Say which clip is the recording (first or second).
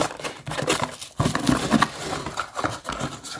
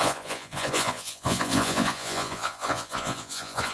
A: first